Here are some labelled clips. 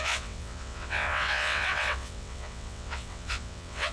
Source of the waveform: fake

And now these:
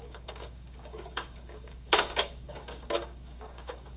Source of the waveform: fake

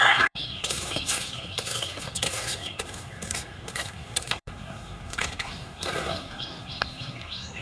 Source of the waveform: fake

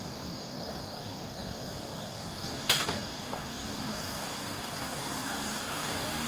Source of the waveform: fake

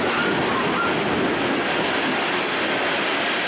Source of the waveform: real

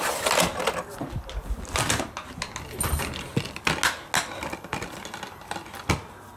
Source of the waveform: real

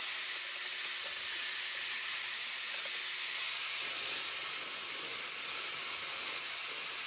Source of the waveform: real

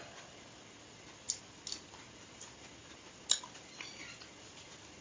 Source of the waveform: real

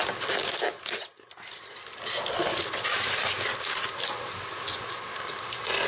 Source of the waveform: real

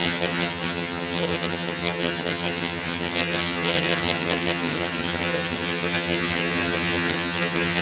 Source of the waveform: fake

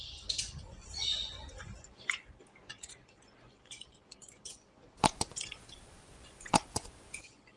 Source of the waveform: fake